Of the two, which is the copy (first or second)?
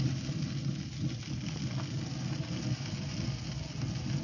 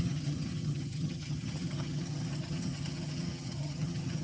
second